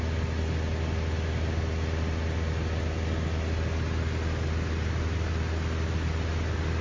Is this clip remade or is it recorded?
recorded